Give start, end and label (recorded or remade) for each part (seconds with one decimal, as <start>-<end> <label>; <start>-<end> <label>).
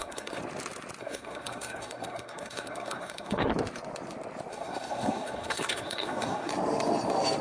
0.0-0.4 remade; 0.4-1.0 recorded; 1.0-3.5 remade; 3.5-4.5 recorded; 4.5-6.5 remade; 6.5-7.4 recorded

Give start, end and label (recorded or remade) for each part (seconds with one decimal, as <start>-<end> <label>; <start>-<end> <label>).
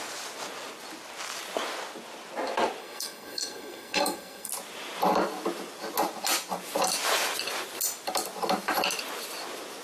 0.0-2.8 recorded; 2.8-4.5 remade; 4.5-9.8 recorded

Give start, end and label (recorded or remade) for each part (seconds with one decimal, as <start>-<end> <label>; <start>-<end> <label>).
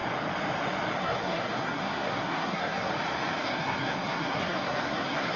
0.0-1.0 recorded; 1.0-2.9 remade; 2.9-3.4 recorded; 3.4-5.4 remade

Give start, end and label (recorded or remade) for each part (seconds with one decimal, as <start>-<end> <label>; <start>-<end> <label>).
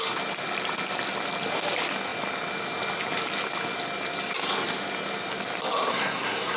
0.0-5.9 recorded; 5.9-6.6 remade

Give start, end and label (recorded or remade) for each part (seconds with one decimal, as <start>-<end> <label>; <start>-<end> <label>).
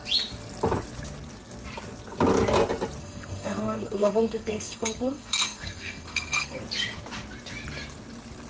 0.0-3.0 recorded; 3.0-6.6 remade; 6.6-8.5 recorded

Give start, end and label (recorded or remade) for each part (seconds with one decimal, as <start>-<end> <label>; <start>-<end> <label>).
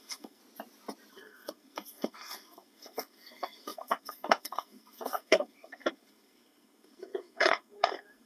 0.0-0.4 remade; 0.4-1.1 recorded; 1.1-8.3 remade